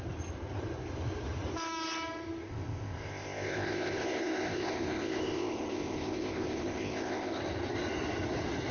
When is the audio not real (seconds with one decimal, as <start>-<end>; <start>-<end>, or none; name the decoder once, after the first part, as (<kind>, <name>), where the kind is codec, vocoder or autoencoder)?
2.5-7.4 (codec, ZipCodec)